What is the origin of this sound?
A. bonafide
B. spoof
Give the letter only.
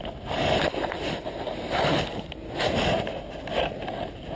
A